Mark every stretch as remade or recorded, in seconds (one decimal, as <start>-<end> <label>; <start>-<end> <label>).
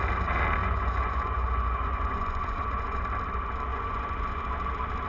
0.0-0.6 recorded; 0.6-3.0 remade; 3.0-3.7 recorded; 3.7-4.4 remade; 4.4-5.1 recorded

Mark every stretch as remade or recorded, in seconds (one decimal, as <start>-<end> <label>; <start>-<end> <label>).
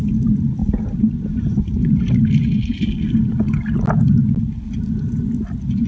0.0-5.9 recorded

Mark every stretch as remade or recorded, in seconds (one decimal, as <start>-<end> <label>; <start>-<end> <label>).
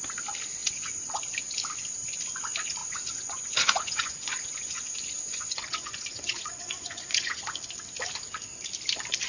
0.0-0.6 recorded; 0.6-1.2 remade; 1.2-2.8 recorded; 2.8-7.4 remade; 7.4-9.3 recorded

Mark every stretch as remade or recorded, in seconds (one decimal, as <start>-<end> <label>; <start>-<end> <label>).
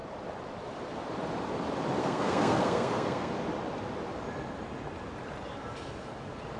0.0-2.0 recorded; 2.0-3.3 remade; 3.3-6.6 recorded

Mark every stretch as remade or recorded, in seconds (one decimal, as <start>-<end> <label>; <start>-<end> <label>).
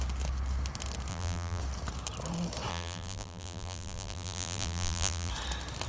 0.0-1.1 recorded; 1.1-1.6 remade; 1.6-2.7 recorded; 2.7-5.3 remade; 5.3-5.9 recorded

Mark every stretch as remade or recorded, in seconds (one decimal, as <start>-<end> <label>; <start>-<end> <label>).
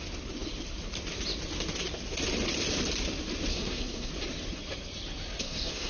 0.0-3.5 recorded; 3.5-4.1 remade; 4.1-5.4 recorded; 5.4-5.9 remade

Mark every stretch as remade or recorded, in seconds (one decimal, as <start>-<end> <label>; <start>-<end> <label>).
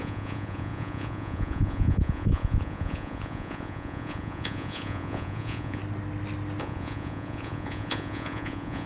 0.0-5.8 remade; 5.8-6.6 recorded; 6.6-8.9 remade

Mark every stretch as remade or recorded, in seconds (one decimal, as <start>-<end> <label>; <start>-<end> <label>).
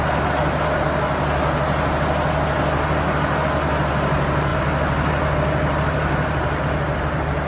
0.0-7.5 recorded